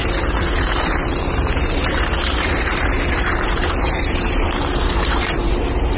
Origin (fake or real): fake